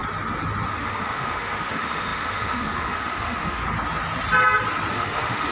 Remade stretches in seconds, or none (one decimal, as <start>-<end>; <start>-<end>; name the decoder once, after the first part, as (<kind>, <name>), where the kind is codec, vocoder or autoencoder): 0.7-3.6 (autoencoder, DAC-VAE); 4.9-5.5